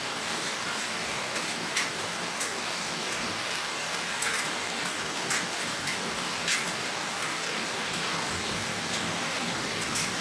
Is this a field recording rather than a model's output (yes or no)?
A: no